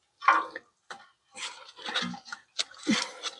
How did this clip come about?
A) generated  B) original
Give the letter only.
B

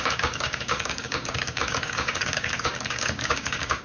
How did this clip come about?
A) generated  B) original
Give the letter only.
A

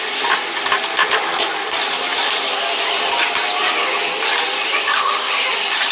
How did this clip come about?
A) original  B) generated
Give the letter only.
A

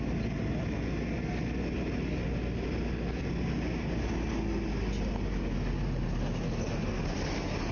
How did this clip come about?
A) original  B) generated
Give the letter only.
A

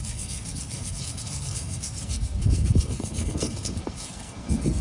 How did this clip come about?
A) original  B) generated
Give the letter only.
B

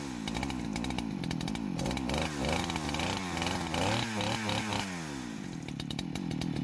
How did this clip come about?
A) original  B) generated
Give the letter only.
A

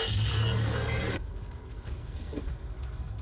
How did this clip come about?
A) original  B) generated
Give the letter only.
B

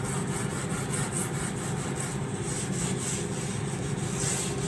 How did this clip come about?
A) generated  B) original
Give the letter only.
B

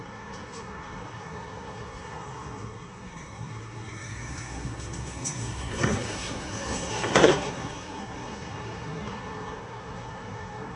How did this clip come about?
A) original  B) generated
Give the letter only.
B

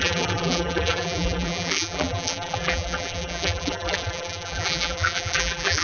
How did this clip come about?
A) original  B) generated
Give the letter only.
B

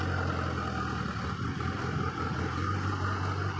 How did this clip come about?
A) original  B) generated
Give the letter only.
A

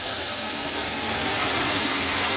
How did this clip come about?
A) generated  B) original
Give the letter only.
A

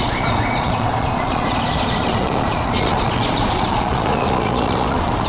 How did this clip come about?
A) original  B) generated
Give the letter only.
B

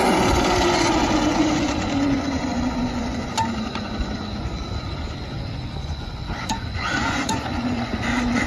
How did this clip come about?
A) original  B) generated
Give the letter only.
B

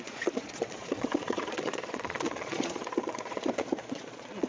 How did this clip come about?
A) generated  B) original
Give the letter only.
A